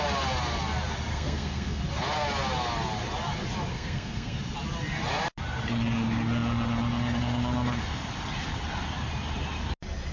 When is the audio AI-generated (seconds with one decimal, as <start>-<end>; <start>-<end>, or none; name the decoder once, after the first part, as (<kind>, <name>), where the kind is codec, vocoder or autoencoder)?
1.1-1.8 (codec, SNAC); 3.7-4.4